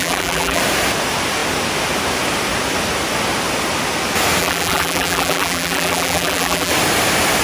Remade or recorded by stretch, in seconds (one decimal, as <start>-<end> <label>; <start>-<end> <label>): 0.0-0.6 remade; 0.6-4.4 recorded; 4.4-6.7 remade; 6.7-7.4 recorded